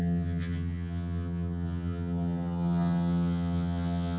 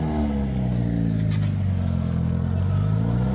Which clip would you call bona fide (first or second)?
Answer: second